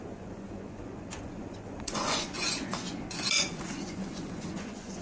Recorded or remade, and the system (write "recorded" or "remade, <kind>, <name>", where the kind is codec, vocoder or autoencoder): remade, vocoder, Vocos